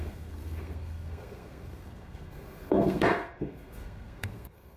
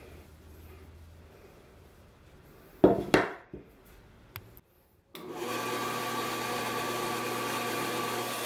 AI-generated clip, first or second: first